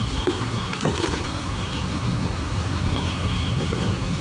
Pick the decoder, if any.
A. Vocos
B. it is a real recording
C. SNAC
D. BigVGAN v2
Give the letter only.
C